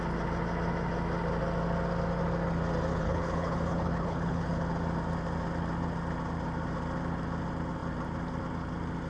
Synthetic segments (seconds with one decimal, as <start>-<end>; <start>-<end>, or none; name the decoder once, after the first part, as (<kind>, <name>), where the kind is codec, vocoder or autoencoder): 2.9-4.6 (codec, HILCodec)